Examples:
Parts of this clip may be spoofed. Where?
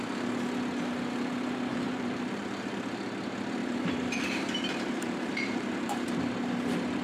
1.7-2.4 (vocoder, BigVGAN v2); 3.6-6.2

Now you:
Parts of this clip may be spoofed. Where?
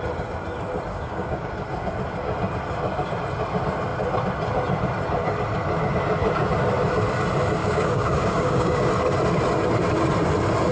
0.9-1.5 (codec, DAC); 7.6-8.9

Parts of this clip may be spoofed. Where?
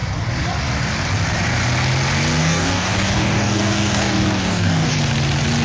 2.4-5.0 (codec, DAC)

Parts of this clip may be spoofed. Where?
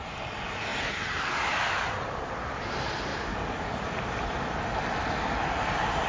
0.7-1.3 (vocoder, BigVGAN v2); 3.1-4.6